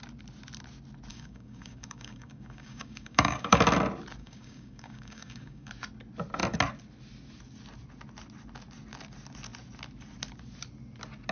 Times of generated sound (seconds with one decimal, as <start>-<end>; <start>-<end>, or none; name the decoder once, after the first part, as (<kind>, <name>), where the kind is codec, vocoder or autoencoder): 1.1-3.6 (codec, DAC); 4.2-5.7